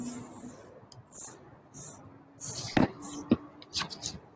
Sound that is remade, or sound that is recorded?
recorded